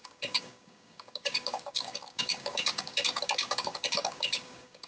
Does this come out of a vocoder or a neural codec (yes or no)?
yes